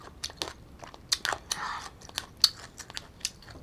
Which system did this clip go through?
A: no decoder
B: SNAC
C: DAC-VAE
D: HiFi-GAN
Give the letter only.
A